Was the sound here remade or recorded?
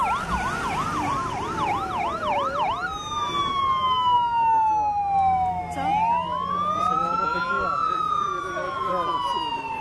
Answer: recorded